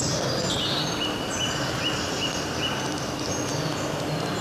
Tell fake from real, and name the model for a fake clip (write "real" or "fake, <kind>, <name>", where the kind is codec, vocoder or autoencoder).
real